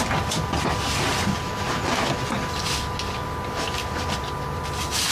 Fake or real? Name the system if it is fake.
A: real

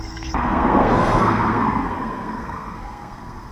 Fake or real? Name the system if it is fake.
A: fake, codec, SNAC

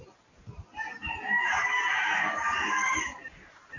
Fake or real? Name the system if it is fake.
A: real